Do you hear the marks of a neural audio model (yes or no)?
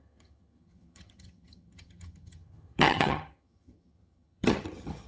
yes